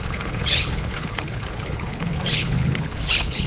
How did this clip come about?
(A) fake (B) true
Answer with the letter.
A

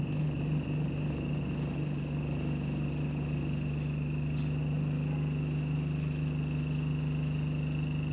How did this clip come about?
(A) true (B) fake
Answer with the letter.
A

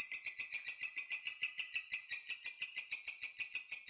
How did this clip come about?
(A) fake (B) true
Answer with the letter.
B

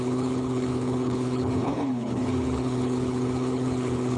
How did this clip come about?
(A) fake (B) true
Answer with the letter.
A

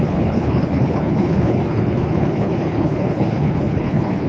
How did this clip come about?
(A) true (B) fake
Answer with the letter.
B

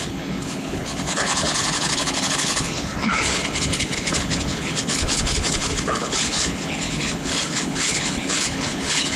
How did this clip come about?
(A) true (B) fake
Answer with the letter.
B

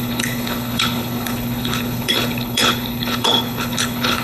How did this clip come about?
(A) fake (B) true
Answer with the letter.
A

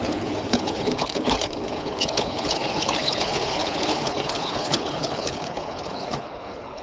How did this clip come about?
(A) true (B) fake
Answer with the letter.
B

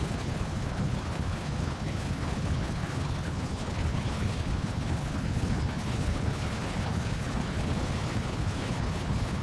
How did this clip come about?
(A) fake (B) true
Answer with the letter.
A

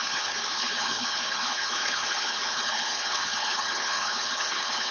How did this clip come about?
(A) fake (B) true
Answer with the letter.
A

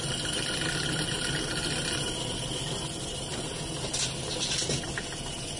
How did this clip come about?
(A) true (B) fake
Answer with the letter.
A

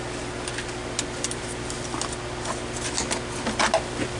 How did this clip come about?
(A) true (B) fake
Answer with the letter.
A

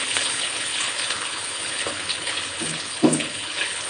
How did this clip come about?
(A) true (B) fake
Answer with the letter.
B